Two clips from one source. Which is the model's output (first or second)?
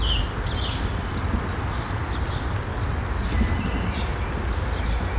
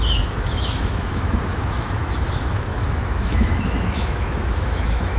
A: second